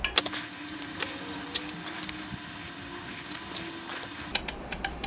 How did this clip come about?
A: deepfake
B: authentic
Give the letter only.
B